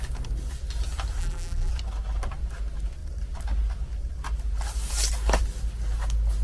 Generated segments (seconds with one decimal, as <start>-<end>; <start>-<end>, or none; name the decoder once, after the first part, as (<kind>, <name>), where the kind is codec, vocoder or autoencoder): 1.2-1.7 (vocoder, BigVGAN v2)